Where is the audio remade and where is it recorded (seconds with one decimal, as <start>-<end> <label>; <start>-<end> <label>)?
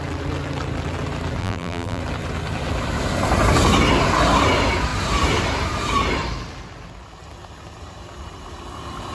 0.0-1.4 recorded; 1.4-2.0 remade; 2.0-9.1 recorded